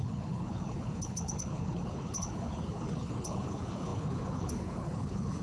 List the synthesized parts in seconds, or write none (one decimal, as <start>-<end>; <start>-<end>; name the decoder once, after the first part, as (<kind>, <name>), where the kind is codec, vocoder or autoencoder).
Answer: 0.0-5.4 (codec, HILCodec)